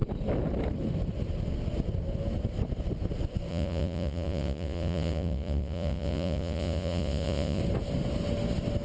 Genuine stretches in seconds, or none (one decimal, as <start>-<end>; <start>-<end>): 0.0-3.5; 7.6-8.8